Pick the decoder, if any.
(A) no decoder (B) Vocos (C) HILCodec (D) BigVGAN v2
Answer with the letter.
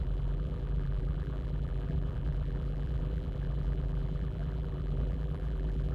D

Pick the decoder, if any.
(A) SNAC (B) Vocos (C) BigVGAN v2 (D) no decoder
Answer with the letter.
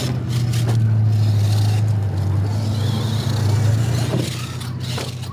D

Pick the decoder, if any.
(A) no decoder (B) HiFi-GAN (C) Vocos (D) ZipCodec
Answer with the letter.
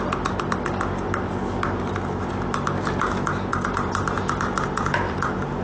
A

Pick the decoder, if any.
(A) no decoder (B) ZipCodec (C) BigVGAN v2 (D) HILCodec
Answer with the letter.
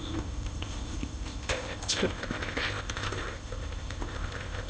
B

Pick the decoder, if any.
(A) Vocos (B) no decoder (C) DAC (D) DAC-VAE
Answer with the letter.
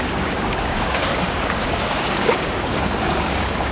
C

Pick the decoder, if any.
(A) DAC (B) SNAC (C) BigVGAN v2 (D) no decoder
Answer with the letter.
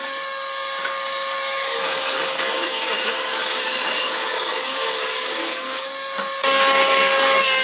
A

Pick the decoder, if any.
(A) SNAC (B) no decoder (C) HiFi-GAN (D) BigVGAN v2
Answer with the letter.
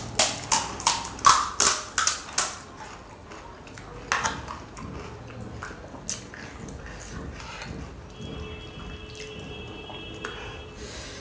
B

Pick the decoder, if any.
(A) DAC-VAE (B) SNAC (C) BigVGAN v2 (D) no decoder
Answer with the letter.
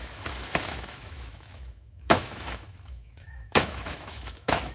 A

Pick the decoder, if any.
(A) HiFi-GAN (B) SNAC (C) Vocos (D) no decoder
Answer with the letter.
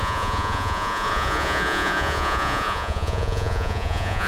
C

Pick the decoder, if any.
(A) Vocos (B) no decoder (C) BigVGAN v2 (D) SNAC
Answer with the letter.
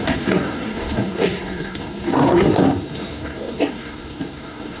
D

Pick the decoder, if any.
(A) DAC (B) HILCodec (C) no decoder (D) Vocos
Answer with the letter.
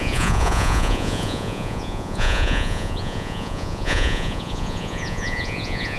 D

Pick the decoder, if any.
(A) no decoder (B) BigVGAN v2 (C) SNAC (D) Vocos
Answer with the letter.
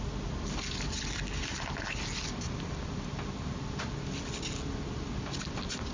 A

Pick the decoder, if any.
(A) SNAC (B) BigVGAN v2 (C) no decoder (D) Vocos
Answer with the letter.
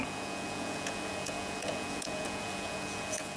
D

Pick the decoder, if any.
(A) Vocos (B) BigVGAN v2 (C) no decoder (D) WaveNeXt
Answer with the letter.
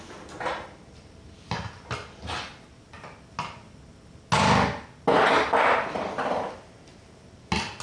C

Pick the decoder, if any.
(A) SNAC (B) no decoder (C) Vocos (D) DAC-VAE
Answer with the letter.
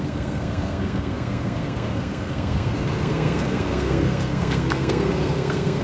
A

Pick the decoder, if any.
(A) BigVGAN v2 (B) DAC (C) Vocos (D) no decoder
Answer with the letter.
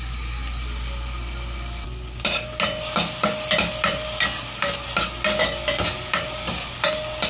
D